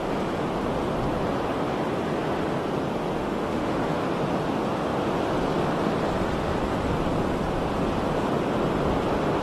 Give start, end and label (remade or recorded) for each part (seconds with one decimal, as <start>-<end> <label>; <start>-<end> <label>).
0.0-3.2 recorded; 3.2-4.0 remade; 4.0-9.4 recorded